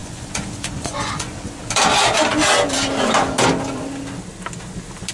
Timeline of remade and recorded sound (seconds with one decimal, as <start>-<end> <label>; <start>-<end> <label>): 0.0-1.6 remade; 1.6-5.1 recorded